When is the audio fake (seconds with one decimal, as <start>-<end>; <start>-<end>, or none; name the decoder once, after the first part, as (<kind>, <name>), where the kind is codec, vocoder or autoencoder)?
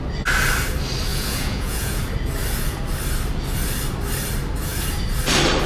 1.1-2.0 (vocoder, Vocos)